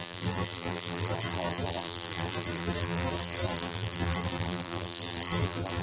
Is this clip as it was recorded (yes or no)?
no